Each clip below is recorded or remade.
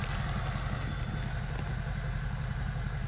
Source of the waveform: recorded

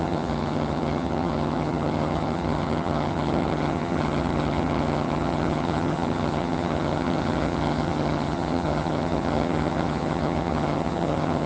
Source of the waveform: remade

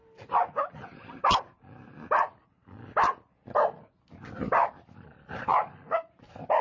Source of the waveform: recorded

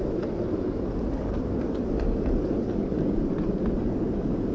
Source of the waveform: recorded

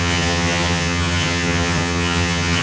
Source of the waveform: remade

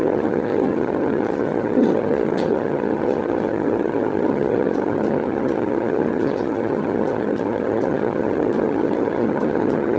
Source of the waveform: remade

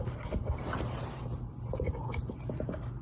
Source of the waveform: recorded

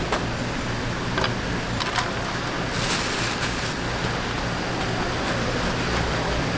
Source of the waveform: recorded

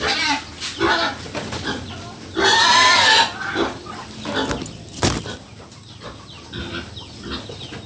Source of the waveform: recorded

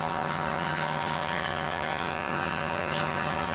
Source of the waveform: remade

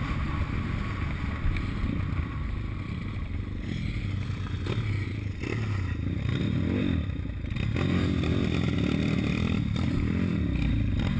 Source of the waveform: recorded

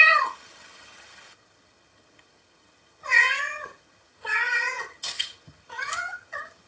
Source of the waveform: remade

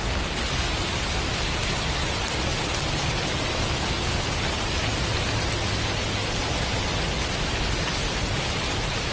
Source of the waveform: recorded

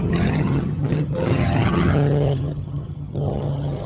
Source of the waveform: remade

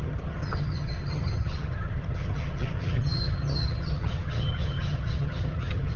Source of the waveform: remade